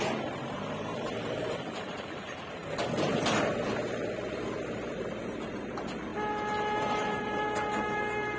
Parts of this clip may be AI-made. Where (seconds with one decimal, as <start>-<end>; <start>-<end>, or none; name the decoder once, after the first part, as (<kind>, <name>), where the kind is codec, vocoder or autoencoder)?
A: 0.0-2.6 (vocoder, BigVGAN v2); 4.3-6.1; 6.8-8.4